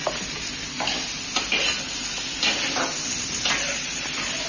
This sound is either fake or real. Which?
real